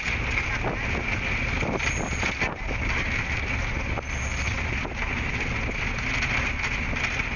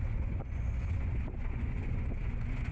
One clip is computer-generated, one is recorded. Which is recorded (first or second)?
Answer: first